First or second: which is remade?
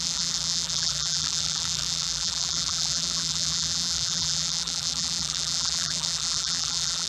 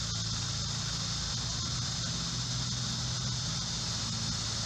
first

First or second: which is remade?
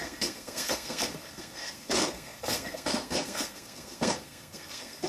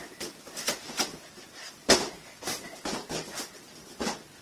first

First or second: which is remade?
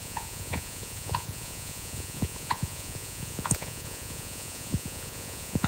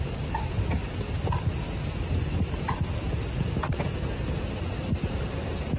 first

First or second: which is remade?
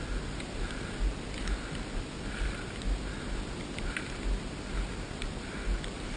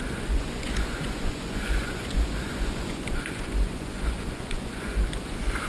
second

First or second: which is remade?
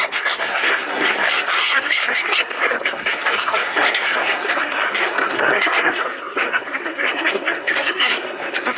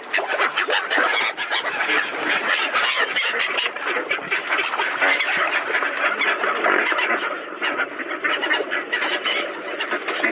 first